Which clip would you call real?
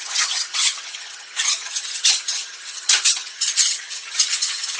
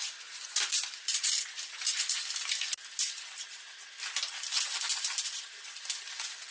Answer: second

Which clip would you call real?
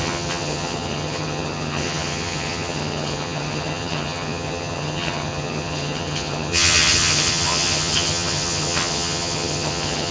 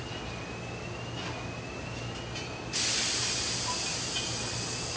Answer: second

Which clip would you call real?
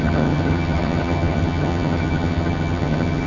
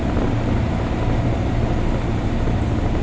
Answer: second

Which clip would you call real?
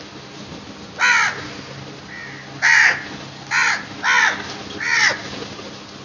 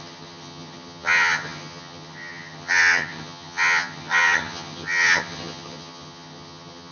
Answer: first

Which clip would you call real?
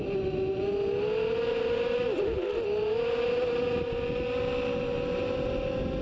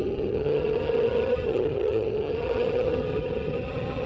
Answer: first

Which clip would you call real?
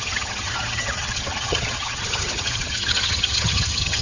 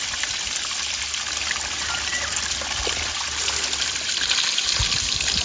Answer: second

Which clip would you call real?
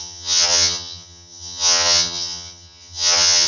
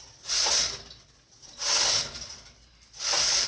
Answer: second